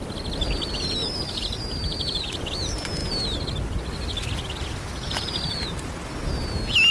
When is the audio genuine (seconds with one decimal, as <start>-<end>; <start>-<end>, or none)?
0.0-1.0; 2.2-6.9